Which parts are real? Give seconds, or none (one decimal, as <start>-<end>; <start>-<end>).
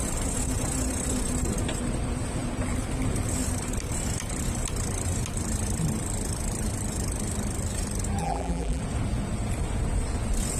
0.0-8.2; 8.8-10.6